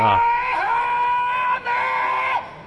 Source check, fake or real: real